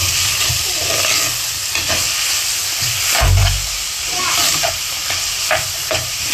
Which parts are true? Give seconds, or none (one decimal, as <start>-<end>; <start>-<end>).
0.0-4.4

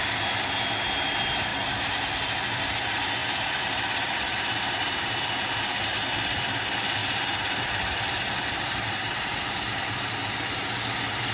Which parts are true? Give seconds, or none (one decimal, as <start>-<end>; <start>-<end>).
0.0-1.5; 2.6-3.2; 5.3-5.9; 6.6-7.0; 9.4-11.3

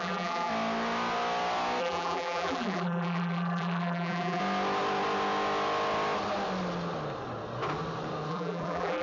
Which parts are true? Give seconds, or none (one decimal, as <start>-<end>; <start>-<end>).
0.5-1.8; 4.4-8.3